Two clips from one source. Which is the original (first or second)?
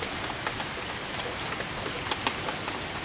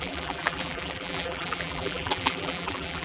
first